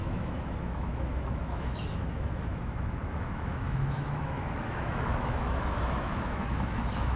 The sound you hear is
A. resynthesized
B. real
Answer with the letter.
A